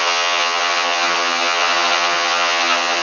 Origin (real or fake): fake